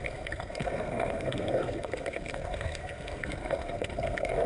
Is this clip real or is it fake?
fake